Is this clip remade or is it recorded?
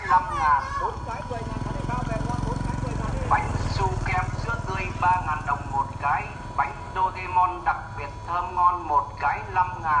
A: recorded